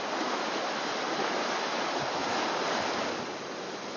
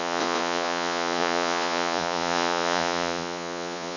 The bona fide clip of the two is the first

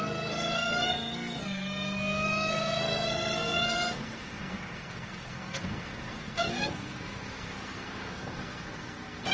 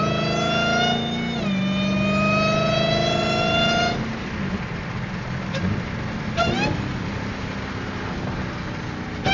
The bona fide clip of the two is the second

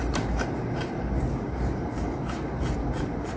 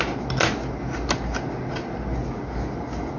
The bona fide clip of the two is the second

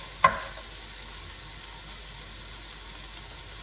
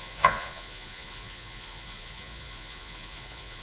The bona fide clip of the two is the first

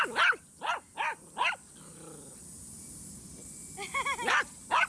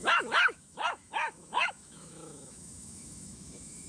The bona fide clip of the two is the first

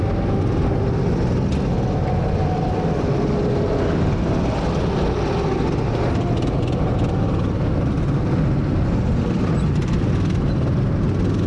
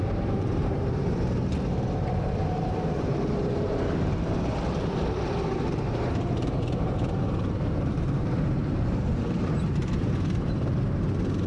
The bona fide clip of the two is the first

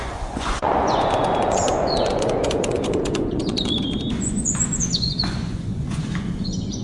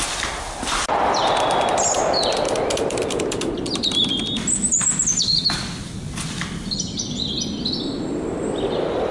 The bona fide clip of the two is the second